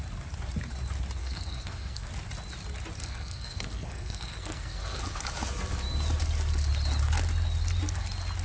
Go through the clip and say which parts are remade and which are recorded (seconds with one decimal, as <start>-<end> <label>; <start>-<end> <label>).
0.0-1.2 recorded; 1.2-2.1 remade; 2.1-3.0 recorded; 3.0-5.0 remade; 5.0-8.4 recorded